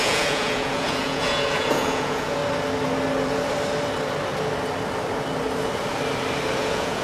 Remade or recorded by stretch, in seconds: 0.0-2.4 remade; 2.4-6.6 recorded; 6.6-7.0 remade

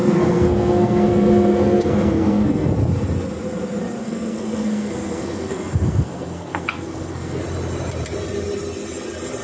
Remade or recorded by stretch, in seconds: 0.0-2.7 remade; 2.7-4.0 recorded; 4.0-7.4 remade; 7.4-9.4 recorded

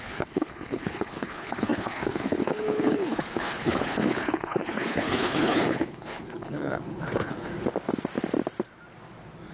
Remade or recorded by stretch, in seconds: 0.0-7.5 remade; 7.5-9.5 recorded